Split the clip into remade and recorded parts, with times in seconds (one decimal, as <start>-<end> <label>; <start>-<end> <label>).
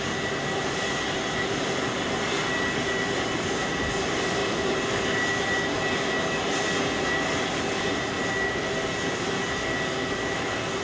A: 0.0-10.8 recorded